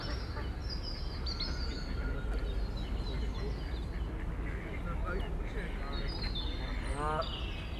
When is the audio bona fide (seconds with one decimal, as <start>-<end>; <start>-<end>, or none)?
0.0-7.8